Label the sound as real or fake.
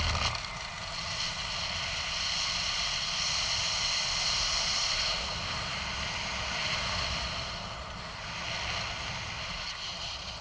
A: real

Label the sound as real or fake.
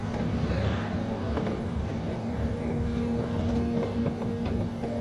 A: fake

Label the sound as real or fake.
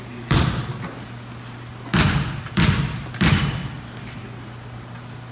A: real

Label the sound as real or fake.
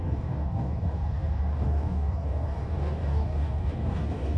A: fake